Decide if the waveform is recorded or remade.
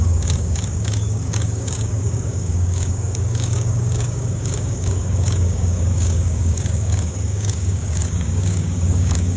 remade